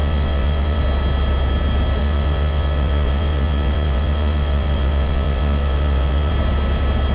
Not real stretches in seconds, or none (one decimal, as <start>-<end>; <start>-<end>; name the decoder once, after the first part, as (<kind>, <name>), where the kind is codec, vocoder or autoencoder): 0.0-0.8 (vocoder, WaveNeXt); 2.0-6.3